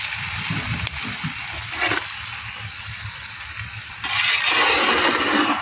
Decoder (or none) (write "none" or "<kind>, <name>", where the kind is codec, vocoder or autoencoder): none